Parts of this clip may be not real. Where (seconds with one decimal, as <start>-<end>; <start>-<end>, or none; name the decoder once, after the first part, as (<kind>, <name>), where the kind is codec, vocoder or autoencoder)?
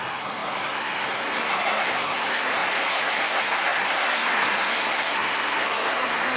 0.0-6.4 (codec, SNAC)